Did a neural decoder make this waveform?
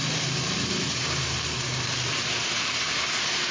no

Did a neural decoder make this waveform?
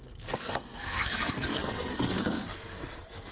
yes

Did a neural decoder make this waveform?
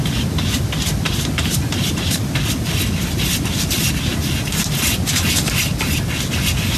no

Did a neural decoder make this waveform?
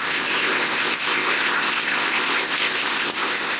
yes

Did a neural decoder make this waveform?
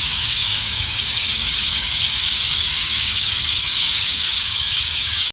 yes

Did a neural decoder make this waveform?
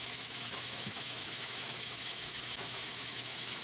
yes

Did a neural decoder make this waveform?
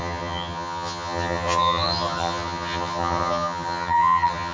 yes